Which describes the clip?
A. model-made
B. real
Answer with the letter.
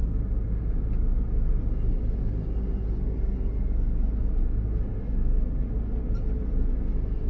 B